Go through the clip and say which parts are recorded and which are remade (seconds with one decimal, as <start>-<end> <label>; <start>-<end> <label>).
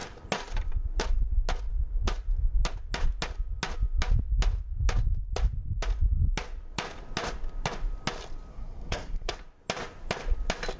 0.0-8.5 recorded; 8.5-9.3 remade; 9.3-10.8 recorded